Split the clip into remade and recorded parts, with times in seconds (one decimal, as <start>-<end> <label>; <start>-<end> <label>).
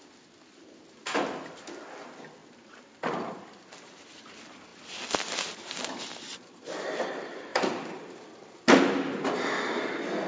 0.0-4.7 recorded; 4.7-6.8 remade; 6.8-7.5 recorded; 7.5-9.3 remade; 9.3-10.3 recorded